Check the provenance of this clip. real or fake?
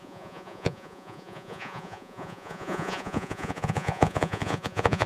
fake